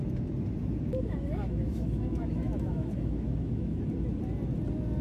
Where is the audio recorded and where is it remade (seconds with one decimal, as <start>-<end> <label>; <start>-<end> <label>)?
0.0-0.9 recorded; 0.9-3.8 remade; 3.8-5.0 recorded